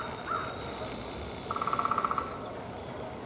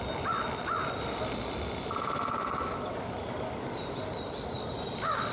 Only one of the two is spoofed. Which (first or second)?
second